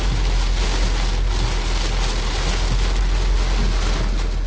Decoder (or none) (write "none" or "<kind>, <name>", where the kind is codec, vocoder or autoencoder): none